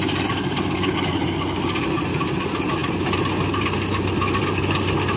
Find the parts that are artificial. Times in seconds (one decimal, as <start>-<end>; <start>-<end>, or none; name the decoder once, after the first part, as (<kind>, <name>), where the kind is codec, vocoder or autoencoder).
none